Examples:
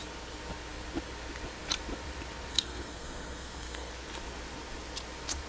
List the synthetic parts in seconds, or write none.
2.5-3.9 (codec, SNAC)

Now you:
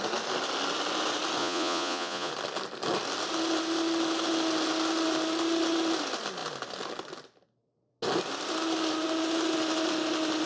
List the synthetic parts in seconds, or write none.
1.4-2.3 (vocoder, Vocos)

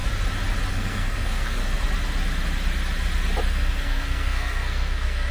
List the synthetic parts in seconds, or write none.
0.7-1.6 (codec, SNAC); 3.5-5.3

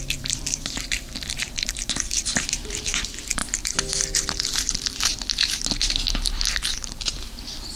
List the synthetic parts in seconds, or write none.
0.0-3.4 (vocoder, BigVGAN v2); 6.3-7.8

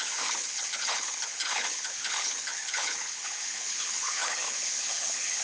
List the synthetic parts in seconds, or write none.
0.0-5.4 (codec, HILCodec)

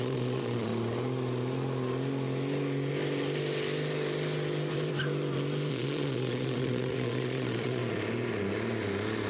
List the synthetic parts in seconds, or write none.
0.0-0.7 (vocoder, Vocos); 5.7-7.8

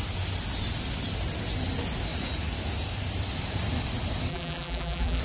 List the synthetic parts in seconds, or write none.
4.3-5.2 (vocoder, BigVGAN v2)